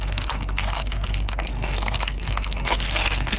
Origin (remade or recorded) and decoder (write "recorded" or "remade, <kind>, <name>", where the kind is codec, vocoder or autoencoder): remade, codec, SNAC